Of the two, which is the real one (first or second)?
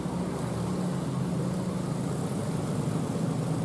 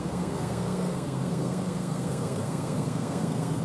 first